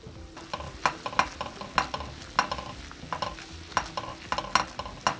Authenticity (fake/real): real